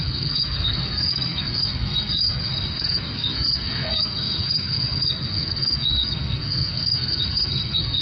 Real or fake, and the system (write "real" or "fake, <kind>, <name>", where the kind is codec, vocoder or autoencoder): fake, codec, SNAC